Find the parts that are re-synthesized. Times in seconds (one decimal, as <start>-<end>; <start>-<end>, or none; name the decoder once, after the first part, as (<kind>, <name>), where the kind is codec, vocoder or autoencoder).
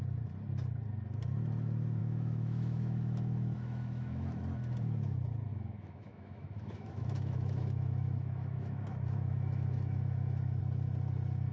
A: 2.0-4.4 (autoencoder, DAC-VAE); 5.5-10.6